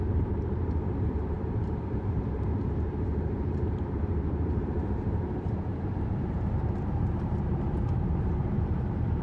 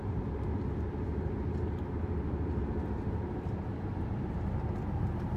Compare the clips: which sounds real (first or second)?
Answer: second